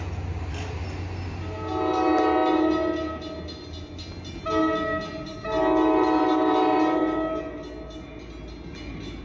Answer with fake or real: real